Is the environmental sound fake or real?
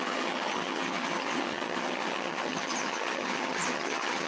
fake